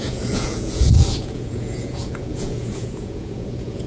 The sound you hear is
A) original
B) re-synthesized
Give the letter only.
B